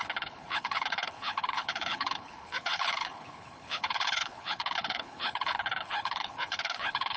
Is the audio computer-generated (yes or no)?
yes